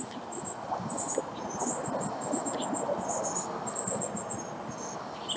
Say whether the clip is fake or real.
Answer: real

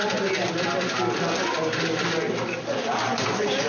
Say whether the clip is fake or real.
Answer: real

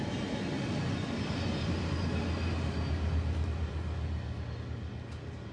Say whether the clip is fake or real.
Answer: real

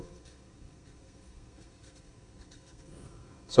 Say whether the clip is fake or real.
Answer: fake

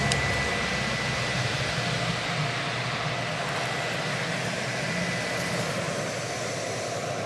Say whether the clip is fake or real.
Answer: real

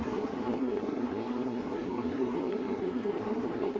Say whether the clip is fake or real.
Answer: fake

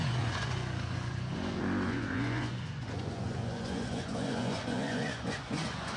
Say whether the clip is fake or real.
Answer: fake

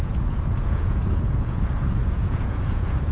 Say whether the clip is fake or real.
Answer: fake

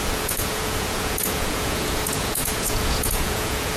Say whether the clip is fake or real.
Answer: fake